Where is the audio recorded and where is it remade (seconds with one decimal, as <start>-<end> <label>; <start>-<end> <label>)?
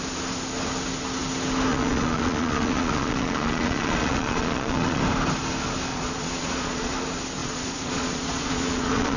0.0-1.7 recorded; 1.7-5.0 remade; 5.0-5.9 recorded; 5.9-6.9 remade; 6.9-7.4 recorded; 7.4-9.2 remade